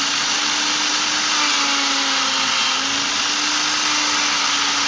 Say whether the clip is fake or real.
real